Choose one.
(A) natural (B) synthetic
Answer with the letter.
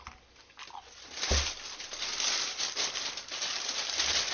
A